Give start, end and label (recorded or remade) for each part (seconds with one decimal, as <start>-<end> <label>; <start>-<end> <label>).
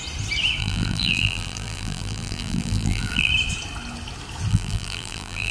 0.0-0.6 recorded; 0.6-3.3 remade; 3.3-4.5 recorded; 4.5-5.5 remade